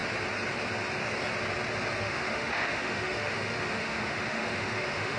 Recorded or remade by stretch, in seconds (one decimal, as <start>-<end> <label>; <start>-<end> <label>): 0.0-2.0 recorded; 2.0-5.2 remade